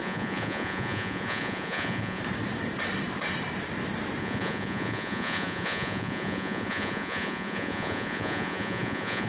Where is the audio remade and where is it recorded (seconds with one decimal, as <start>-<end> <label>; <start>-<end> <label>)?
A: 0.0-2.2 remade; 2.2-4.2 recorded; 4.2-9.3 remade